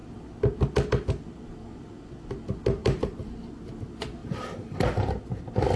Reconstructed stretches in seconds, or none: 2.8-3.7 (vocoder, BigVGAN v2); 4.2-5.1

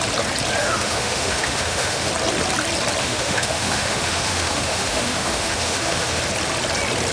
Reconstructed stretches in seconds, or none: 0.6-2.1 (autoencoder, DAC-VAE); 3.0-6.2

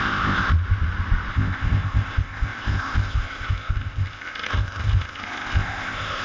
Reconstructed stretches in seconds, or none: 0.0-0.5 (codec, ZipCodec); 1.3-6.2

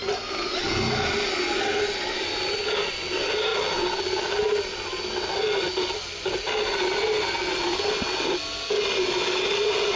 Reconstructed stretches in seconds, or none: none

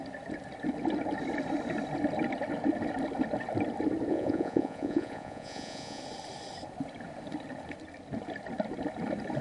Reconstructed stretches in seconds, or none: 4.1-6.0 (vocoder, Vocos)

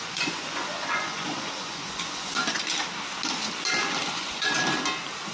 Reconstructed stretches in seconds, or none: 0.0-2.4 (vocoder, Vocos); 4.1-4.6

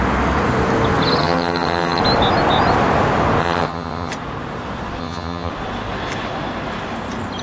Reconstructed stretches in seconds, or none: 1.2-2.0 (vocoder, HiFi-GAN); 3.4-4.1; 5.0-5.5

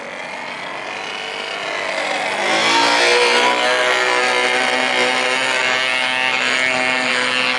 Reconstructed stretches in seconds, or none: none